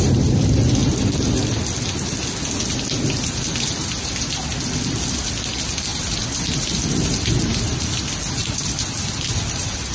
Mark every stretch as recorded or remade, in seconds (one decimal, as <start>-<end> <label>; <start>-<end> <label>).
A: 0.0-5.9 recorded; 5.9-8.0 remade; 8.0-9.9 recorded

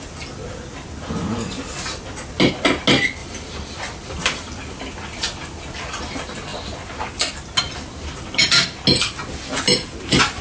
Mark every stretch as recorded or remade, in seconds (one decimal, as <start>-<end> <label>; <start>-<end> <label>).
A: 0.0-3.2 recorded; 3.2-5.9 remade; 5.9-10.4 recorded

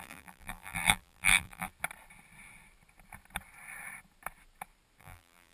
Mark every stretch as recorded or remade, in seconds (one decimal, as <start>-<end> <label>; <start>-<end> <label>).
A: 0.0-1.7 remade; 1.7-5.0 recorded; 5.0-5.5 remade

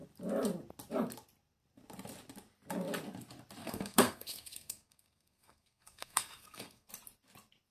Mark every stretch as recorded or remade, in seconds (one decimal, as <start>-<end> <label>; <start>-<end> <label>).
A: 0.0-3.6 recorded; 3.6-6.9 remade; 6.9-7.7 recorded

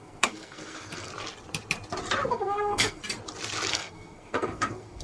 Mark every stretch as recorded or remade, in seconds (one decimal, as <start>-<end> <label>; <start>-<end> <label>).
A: 0.0-1.1 remade; 1.1-2.3 recorded; 2.3-3.0 remade; 3.0-3.7 recorded; 3.7-5.0 remade